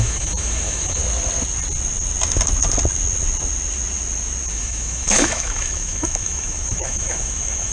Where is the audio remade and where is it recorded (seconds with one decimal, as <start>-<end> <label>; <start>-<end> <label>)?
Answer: 0.0-1.0 remade; 1.0-4.5 recorded; 4.5-7.7 remade